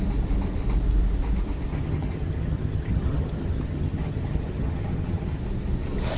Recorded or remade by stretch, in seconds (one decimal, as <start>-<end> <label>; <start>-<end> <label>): 0.0-1.7 recorded; 1.7-5.4 remade; 5.4-6.2 recorded